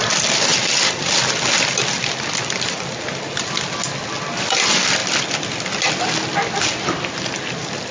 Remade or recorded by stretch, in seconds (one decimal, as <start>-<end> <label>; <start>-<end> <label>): 0.0-7.9 recorded